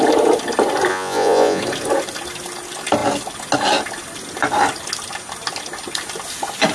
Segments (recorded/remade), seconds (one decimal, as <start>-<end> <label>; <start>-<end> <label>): 0.0-0.9 recorded; 0.9-1.6 remade; 1.6-6.7 recorded